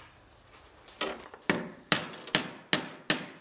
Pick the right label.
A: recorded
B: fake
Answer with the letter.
A